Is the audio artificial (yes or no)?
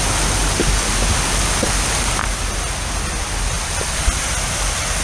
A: no